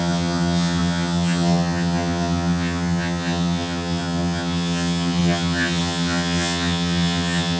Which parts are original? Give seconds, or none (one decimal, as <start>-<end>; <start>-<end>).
none